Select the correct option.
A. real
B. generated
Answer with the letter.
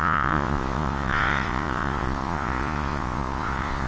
B